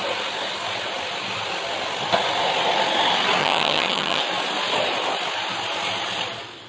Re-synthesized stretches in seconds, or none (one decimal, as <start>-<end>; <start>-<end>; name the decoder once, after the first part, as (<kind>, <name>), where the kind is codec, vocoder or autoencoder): 3.4-4.2 (vocoder, HiFi-GAN)